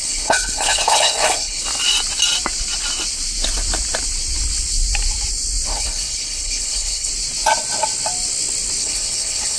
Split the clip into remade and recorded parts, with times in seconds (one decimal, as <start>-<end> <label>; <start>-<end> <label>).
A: 0.0-1.6 remade; 1.6-5.7 recorded; 5.7-7.1 remade; 7.1-8.8 recorded; 8.8-9.6 remade